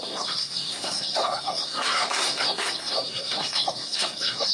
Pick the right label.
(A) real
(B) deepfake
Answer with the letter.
B